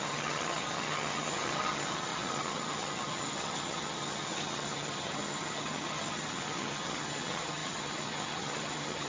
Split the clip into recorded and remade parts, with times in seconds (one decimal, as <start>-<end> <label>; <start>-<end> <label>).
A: 0.0-9.1 remade